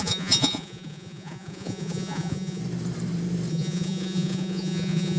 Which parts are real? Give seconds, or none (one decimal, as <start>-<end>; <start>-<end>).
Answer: 2.6-3.5